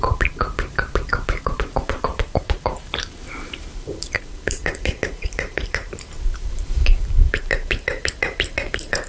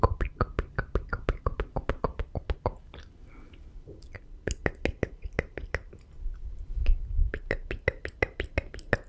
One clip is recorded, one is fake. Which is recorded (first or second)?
second